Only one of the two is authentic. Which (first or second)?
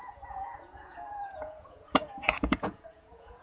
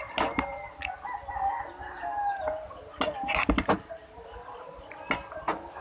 second